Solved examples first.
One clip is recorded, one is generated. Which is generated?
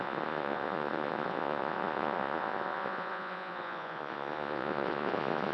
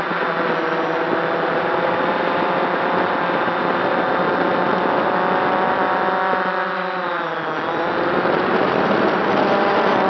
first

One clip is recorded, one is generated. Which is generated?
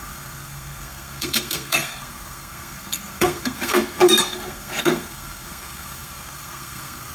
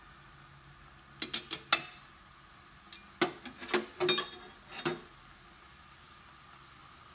first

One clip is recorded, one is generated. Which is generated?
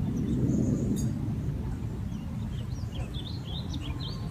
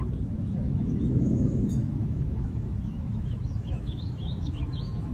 second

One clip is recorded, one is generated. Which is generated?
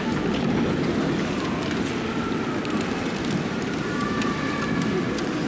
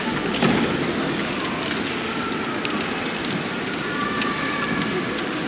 first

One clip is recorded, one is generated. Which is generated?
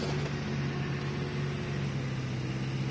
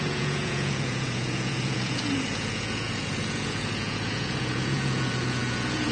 second